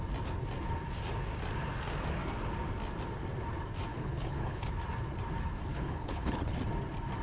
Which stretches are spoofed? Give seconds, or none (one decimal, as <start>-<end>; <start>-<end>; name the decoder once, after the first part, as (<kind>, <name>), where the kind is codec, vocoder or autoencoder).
3.9-4.7 (codec, HILCodec); 5.7-6.6